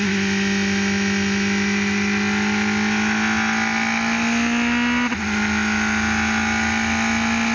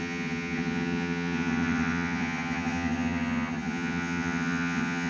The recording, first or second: first